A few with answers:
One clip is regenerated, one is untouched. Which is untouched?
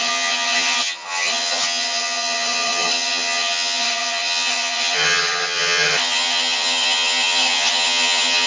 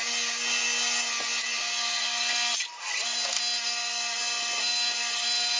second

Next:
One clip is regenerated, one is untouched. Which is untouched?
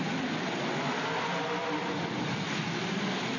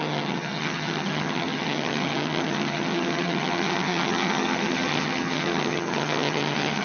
first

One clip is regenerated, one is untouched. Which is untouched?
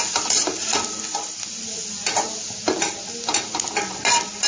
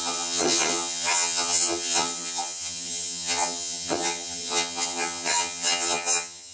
first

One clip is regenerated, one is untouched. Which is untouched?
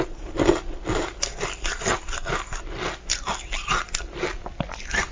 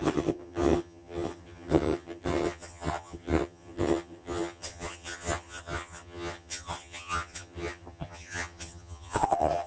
first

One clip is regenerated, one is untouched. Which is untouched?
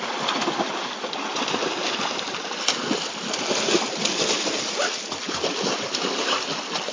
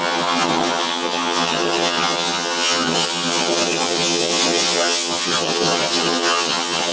first